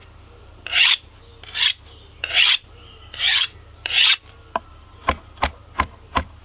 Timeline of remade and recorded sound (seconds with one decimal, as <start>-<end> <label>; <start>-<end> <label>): 0.0-1.3 remade; 1.3-2.2 recorded; 2.2-4.1 remade; 4.1-4.7 recorded; 4.7-6.4 remade